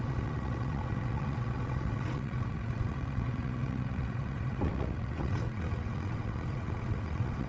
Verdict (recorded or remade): remade